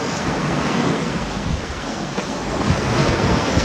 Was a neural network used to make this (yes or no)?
yes